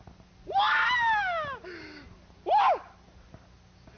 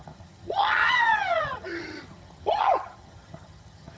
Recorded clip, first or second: first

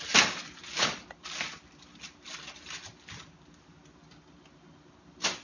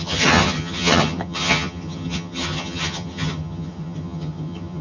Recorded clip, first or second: first